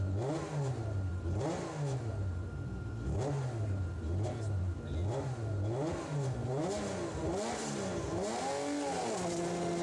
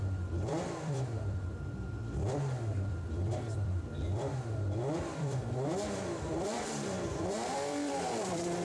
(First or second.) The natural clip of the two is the first